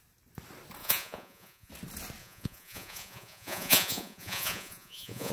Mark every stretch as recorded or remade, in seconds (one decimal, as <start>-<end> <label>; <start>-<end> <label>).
0.0-0.8 recorded; 0.8-1.7 remade; 1.7-2.2 recorded; 2.2-5.3 remade